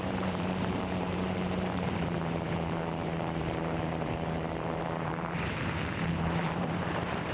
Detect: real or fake fake